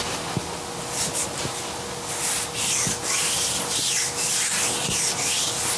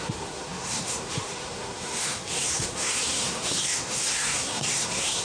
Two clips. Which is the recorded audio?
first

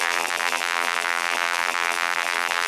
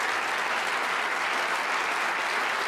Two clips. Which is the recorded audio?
second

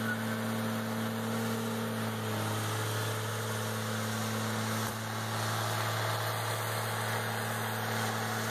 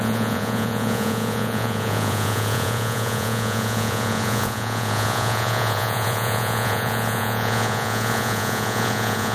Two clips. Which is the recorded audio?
first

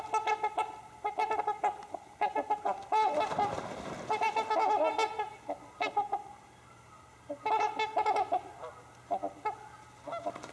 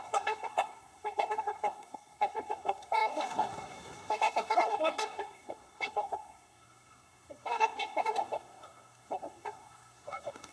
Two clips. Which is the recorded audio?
first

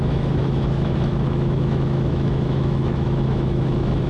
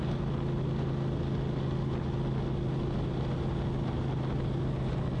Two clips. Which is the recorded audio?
second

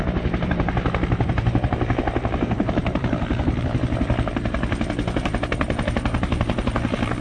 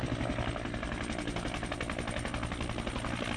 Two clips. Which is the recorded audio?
second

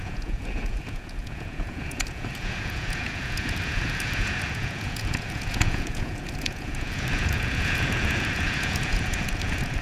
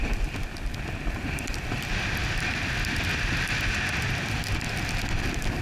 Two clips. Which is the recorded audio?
second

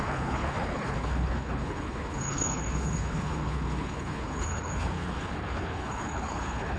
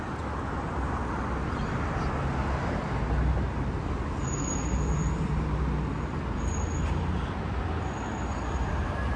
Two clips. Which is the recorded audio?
second